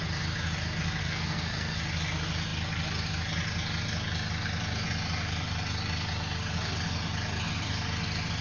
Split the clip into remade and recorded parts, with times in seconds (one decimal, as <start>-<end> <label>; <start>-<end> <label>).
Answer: 0.0-1.0 recorded; 1.0-1.8 remade; 1.8-8.4 recorded